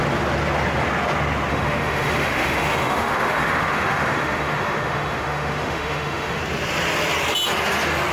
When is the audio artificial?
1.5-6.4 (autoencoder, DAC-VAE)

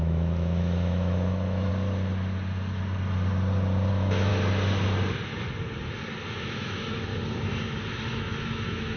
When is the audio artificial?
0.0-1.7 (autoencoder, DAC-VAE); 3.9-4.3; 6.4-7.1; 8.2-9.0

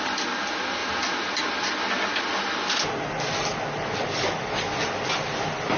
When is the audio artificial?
none

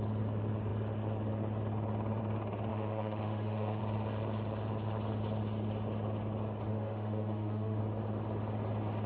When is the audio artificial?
2.7-3.8 (autoencoder, DAC-VAE); 6.7-7.8

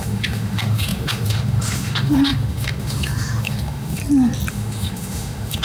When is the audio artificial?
0.0-4.0 (autoencoder, DAC-VAE); 4.5-5.6

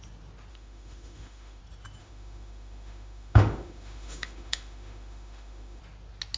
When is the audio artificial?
0.5-1.6 (autoencoder, DAC-VAE); 2.0-5.8